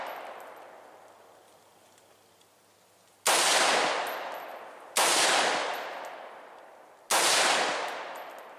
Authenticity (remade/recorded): recorded